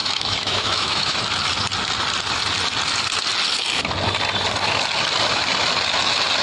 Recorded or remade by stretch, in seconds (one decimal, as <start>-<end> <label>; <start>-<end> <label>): 0.0-1.2 remade; 1.2-6.4 recorded